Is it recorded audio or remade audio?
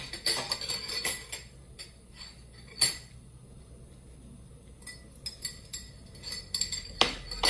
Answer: recorded